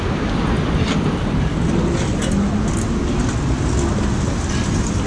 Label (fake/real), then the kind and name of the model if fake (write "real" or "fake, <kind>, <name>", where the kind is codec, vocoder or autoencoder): real